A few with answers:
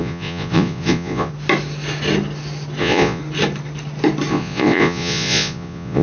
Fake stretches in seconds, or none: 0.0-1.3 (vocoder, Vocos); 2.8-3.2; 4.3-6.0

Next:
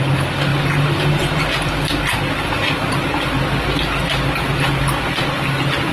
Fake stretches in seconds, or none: none

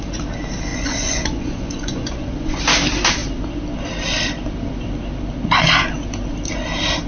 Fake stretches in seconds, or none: 0.7-2.6 (vocoder, Vocos)

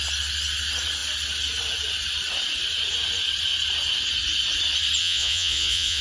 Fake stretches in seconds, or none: 5.0-6.0 (vocoder, Vocos)

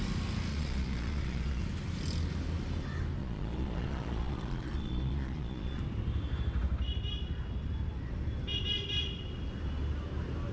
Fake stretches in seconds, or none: 0.5-1.6 (vocoder, Vocos); 3.2-5.8

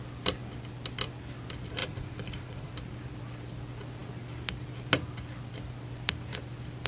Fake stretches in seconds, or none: 1.8-2.7 (vocoder, Vocos)

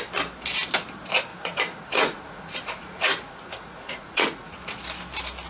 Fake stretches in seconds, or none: 1.3-4.6 (vocoder, Vocos)